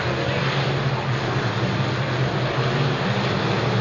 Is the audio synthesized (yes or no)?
no